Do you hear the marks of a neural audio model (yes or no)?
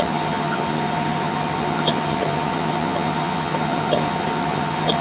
yes